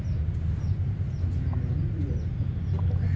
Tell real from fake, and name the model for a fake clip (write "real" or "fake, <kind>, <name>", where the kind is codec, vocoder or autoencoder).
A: real